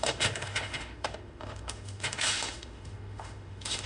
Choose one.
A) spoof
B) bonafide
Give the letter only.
A